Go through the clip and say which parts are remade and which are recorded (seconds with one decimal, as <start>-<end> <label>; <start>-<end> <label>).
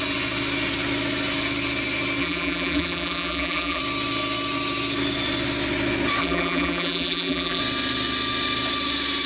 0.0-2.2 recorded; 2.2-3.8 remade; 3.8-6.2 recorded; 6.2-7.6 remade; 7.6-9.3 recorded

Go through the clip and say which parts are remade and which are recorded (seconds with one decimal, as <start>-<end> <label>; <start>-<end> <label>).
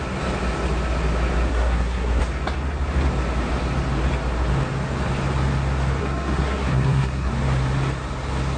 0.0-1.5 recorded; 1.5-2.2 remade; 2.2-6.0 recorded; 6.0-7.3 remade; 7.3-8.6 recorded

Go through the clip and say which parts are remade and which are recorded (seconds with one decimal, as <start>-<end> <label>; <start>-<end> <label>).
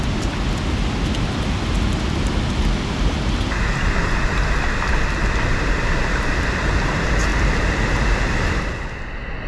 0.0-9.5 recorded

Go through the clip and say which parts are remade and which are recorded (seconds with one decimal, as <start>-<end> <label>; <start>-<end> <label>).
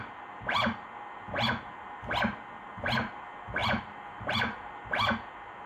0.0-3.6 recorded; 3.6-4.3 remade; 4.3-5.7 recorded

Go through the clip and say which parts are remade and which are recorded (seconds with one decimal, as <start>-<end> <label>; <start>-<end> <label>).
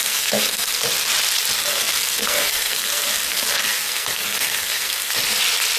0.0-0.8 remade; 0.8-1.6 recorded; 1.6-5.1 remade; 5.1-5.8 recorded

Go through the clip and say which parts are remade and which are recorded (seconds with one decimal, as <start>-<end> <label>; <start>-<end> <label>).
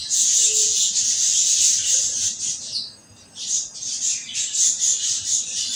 0.0-0.9 remade; 0.9-5.8 recorded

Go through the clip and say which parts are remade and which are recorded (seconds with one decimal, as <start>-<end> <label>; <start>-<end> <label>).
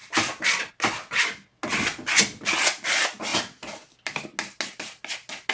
0.0-0.7 remade; 0.7-5.5 recorded